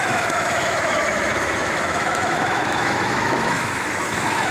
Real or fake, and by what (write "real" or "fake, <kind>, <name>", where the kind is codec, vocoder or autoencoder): fake, autoencoder, DAC-VAE